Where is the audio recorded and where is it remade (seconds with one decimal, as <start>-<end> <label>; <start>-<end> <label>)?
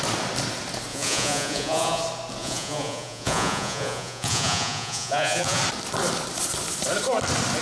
0.0-0.9 recorded; 0.9-2.0 remade; 2.0-2.4 recorded; 2.4-5.6 remade; 5.6-7.6 recorded